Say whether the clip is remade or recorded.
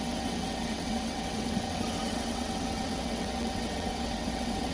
remade